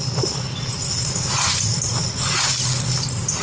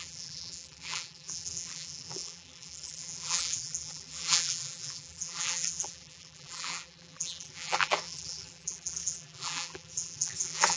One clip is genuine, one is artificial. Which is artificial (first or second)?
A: second